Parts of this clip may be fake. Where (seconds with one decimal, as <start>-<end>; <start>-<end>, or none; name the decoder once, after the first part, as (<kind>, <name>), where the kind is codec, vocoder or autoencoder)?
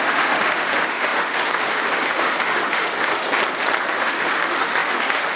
0.0-3.2 (autoencoder, DAC-VAE); 4.0-5.4